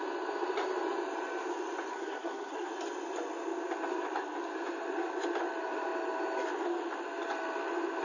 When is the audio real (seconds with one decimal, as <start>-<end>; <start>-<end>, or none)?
0.0-1.9; 2.7-8.0